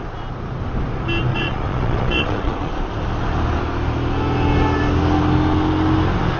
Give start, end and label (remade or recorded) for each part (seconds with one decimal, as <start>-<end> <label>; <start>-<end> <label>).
0.0-1.3 recorded; 1.3-2.7 remade; 2.7-6.4 recorded